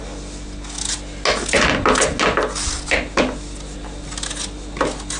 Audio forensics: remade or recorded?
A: recorded